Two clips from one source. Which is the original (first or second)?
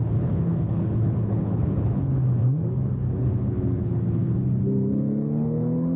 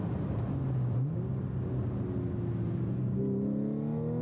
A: second